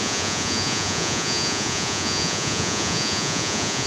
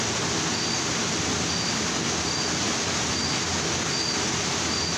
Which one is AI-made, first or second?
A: first